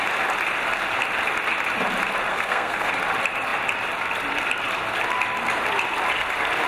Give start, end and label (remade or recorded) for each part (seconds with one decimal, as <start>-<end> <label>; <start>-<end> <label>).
0.0-2.3 recorded; 2.3-2.9 remade; 2.9-6.7 recorded